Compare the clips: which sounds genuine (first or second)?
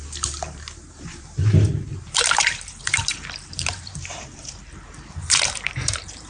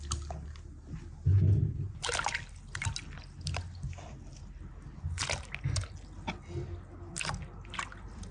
second